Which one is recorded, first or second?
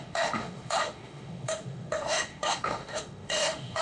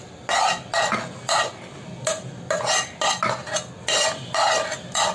second